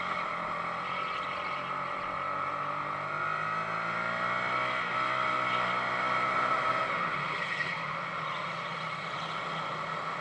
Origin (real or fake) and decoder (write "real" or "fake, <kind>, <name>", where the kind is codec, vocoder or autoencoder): real